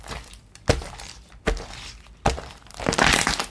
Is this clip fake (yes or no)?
no